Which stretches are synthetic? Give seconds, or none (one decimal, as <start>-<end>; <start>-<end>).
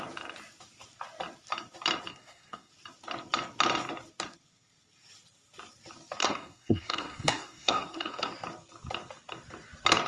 2.1-2.7; 6.2-8.3